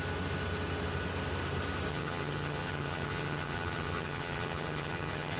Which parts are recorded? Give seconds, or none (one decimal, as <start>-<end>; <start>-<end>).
0.0-1.9